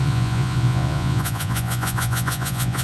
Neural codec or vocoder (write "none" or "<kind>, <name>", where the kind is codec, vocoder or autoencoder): vocoder, Vocos